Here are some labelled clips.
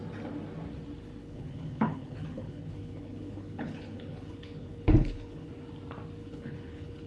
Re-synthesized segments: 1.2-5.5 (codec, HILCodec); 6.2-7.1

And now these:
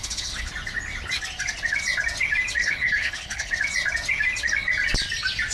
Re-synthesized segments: 0.0-0.5 (codec, HILCodec); 2.6-3.5

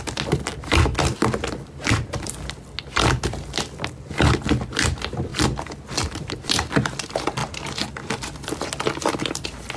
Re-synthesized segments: none